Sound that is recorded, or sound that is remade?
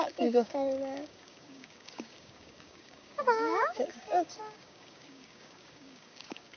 remade